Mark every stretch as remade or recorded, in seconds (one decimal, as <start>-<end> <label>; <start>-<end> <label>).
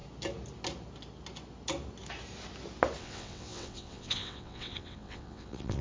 0.0-3.0 recorded; 3.0-5.8 remade